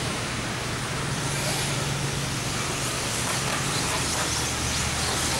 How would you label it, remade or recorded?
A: recorded